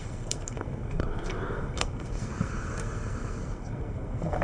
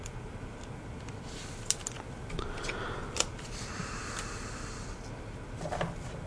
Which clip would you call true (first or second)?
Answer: second